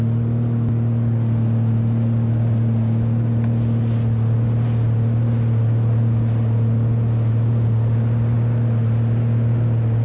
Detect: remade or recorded recorded